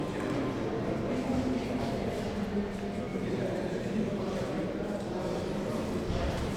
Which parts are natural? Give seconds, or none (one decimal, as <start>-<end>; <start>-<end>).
0.0-1.6; 2.2-3.1; 5.2-6.6